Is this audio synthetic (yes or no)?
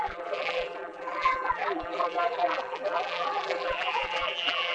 yes